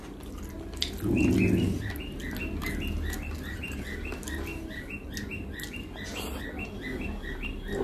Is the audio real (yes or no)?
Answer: yes